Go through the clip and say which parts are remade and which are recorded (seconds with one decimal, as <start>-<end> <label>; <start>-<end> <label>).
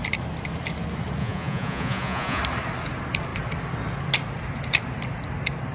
0.0-1.2 recorded; 1.2-2.4 remade; 2.4-5.7 recorded